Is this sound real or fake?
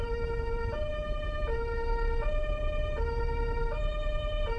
fake